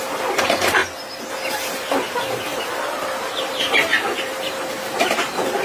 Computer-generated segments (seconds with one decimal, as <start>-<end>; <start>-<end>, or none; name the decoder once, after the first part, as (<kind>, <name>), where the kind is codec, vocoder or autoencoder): 0.0-0.8 (vocoder, BigVGAN v2); 1.3-2.5; 3.2-5.6